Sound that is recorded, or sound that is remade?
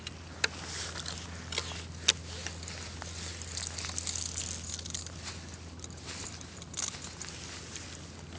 recorded